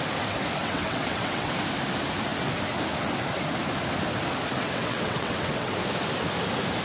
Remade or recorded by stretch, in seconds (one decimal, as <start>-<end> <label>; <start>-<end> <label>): 0.0-0.6 recorded; 0.6-1.5 remade; 1.5-4.6 recorded; 4.6-5.7 remade; 5.7-6.8 recorded